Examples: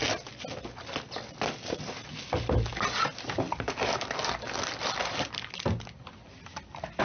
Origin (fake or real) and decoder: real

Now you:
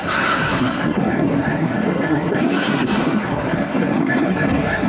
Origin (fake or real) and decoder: fake, codec, SNAC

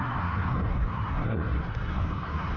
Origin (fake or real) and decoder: fake, codec, SNAC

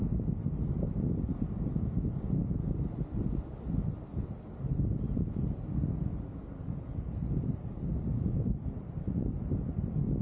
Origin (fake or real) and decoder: real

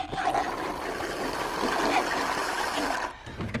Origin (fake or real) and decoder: real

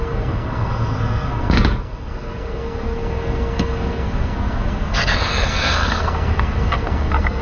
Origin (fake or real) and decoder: fake, codec, SNAC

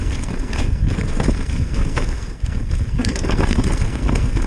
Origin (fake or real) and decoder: fake, codec, SNAC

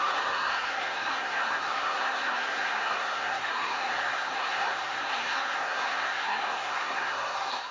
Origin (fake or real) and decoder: fake, codec, SNAC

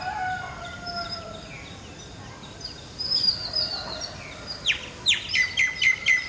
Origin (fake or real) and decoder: real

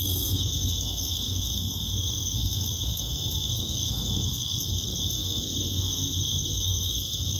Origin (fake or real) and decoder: fake, codec, SNAC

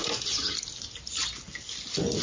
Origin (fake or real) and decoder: real